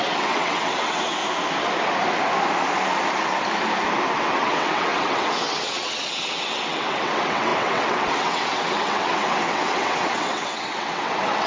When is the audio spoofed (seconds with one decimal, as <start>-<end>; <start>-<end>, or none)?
0.0-1.2; 4.1-11.5